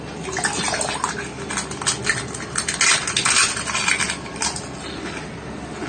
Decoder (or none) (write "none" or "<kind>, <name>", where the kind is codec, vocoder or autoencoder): none